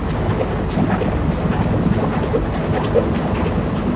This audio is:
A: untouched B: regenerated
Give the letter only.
A